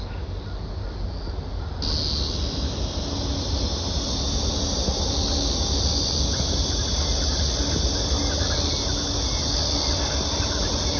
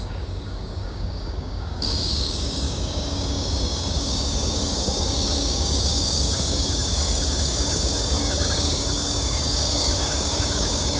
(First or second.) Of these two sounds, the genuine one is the first